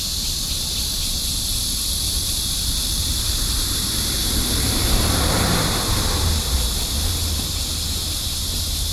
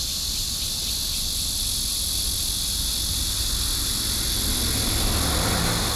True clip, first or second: second